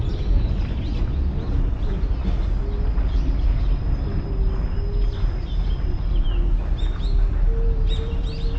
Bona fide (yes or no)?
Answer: yes